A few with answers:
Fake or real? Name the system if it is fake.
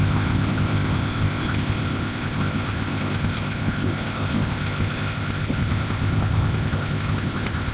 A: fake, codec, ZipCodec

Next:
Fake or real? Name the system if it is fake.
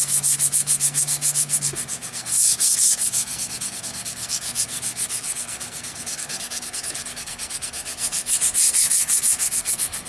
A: fake, codec, SNAC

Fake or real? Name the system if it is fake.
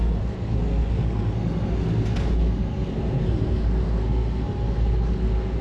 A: fake, codec, SNAC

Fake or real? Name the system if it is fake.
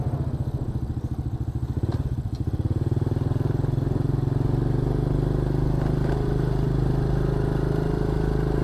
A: real